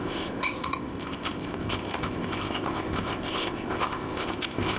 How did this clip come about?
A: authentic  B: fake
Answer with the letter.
B